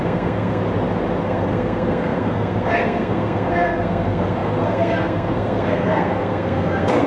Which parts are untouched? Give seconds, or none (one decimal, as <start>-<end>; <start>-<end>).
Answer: 0.6-1.2